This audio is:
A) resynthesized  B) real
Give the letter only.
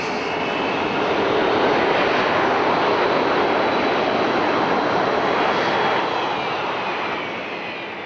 B